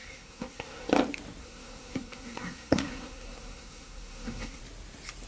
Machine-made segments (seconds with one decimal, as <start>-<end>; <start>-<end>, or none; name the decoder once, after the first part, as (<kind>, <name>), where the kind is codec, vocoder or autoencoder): 0.0-0.9 (codec, SNAC); 1.4-4.6